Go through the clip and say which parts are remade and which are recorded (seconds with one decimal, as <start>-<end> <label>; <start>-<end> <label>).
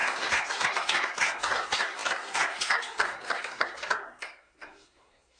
0.0-5.4 remade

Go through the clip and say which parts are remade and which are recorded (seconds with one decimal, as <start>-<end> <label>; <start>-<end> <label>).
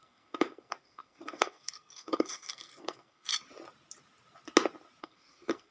0.0-3.3 remade; 3.3-5.0 recorded; 5.0-5.7 remade